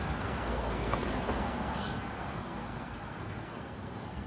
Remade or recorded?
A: remade